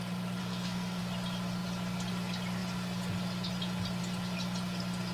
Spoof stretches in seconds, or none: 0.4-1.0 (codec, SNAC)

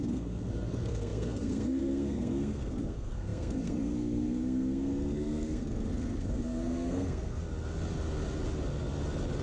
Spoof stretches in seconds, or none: 0.0-7.4 (codec, SNAC)

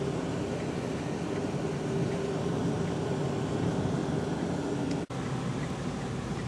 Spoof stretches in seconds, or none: none

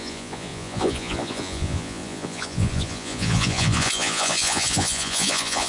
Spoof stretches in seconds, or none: 0.0-5.7 (vocoder, Vocos)

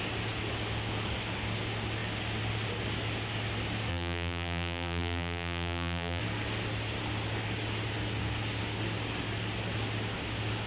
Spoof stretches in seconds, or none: 3.9-6.2 (vocoder, BigVGAN v2)

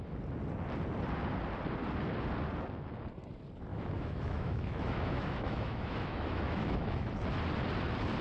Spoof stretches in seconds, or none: 3.7-7.1 (autoencoder, DAC-VAE)

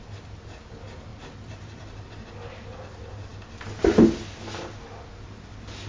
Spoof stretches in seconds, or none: 1.1-2.0 (vocoder, BigVGAN v2)